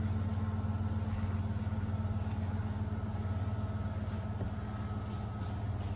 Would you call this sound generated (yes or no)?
no